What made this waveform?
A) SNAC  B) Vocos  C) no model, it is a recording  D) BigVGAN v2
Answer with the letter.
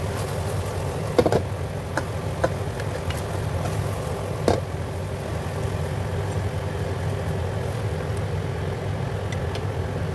C